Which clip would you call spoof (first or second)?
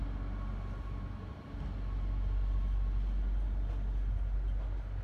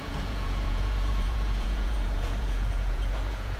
second